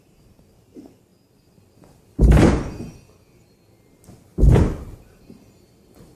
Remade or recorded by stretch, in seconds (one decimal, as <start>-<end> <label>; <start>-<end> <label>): 0.0-1.1 remade; 1.1-4.8 recorded; 4.8-6.2 remade